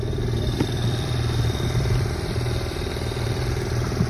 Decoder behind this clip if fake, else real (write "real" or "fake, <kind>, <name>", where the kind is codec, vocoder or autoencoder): fake, vocoder, BigVGAN v2